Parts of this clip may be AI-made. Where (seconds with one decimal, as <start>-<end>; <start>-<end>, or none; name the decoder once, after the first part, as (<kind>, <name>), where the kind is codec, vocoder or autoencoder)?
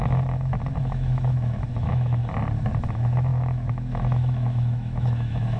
0.0-2.2 (autoencoder, DAC-VAE); 2.9-5.6